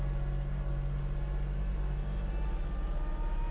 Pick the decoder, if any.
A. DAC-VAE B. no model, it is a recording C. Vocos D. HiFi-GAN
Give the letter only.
B